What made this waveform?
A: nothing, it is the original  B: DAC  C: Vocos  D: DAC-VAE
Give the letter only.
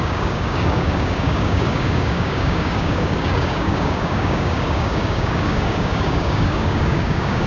B